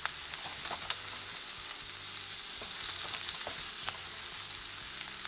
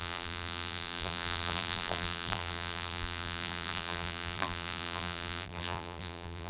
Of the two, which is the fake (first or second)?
second